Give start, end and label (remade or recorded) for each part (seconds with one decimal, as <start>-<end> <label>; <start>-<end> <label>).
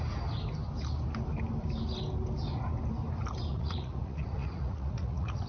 0.0-3.5 recorded; 3.5-5.5 remade